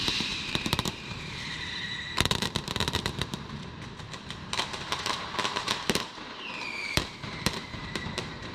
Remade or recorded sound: remade